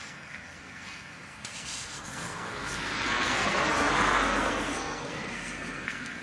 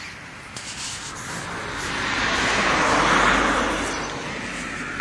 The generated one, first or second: first